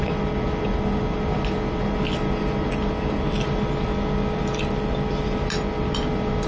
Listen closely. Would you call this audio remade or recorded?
recorded